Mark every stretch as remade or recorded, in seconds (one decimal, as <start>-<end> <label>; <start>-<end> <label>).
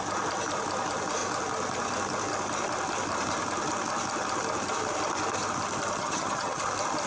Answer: 0.0-6.0 recorded; 6.0-6.6 remade; 6.6-7.1 recorded